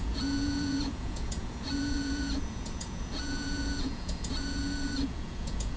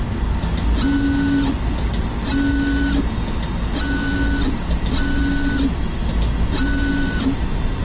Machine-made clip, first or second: first